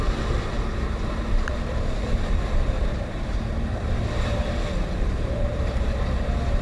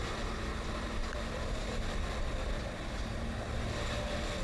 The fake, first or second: first